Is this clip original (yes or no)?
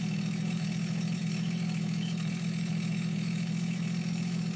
no